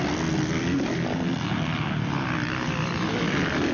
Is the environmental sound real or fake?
real